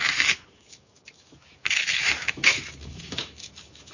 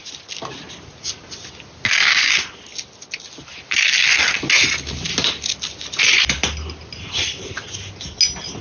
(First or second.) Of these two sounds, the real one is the second